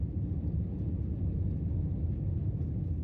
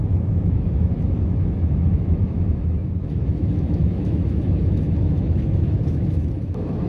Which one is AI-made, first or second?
second